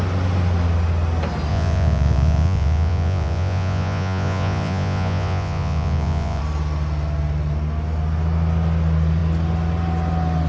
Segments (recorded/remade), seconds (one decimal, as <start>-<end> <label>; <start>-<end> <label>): 0.0-1.5 recorded; 1.5-6.4 remade; 6.4-10.5 recorded